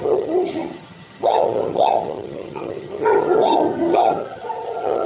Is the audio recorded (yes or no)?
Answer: no